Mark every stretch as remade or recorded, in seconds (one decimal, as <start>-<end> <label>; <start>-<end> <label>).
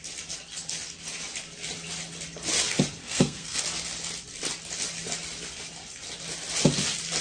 0.0-3.0 recorded; 3.0-3.6 remade; 3.6-7.2 recorded